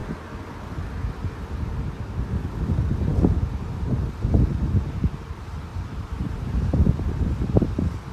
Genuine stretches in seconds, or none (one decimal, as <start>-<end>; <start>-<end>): 0.0-5.7; 7.1-8.1